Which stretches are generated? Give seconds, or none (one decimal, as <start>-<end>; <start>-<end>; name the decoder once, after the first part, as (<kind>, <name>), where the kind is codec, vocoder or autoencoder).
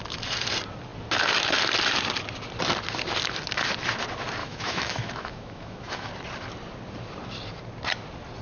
4.4-6.1 (autoencoder, DAC-VAE)